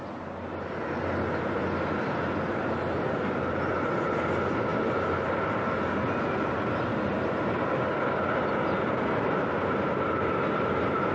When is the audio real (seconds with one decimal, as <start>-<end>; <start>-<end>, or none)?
0.0-11.1